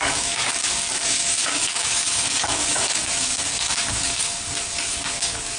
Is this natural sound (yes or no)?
no